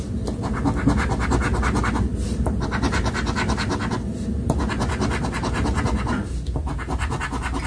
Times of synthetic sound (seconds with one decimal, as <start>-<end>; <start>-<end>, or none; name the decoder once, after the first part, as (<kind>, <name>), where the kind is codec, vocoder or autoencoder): none